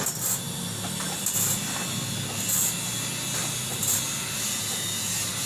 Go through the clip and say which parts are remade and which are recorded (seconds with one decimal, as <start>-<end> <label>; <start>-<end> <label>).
0.0-5.5 recorded